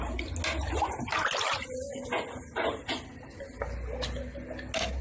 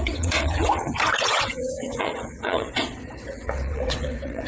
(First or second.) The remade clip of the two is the second